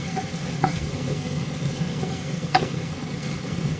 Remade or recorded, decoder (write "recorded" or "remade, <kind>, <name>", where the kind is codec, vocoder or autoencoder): remade, codec, SNAC